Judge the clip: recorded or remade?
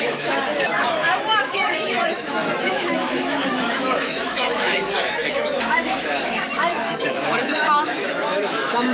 remade